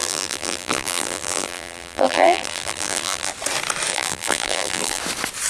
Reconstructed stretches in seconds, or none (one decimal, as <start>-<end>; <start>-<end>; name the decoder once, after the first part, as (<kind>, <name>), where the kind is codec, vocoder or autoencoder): 0.0-3.3 (vocoder, BigVGAN v2); 3.9-5.0